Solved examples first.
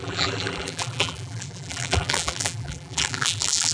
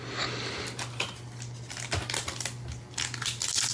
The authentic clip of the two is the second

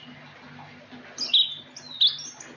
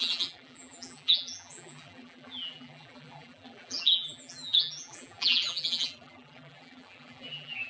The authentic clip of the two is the first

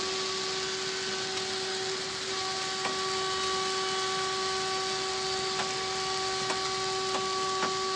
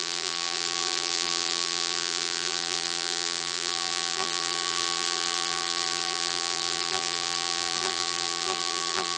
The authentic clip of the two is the first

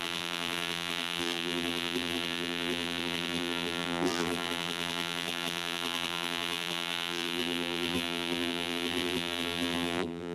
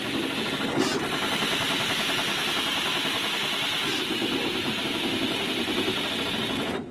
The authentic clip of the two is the second